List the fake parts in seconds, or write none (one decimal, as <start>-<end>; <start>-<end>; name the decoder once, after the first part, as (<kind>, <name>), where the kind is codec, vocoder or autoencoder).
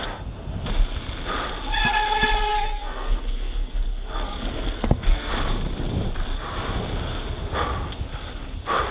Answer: 2.5-5.3 (codec, SNAC)